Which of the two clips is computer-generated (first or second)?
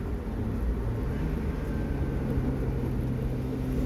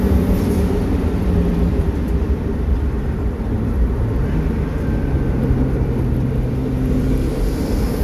second